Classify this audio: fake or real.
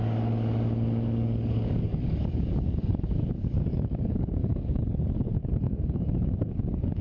fake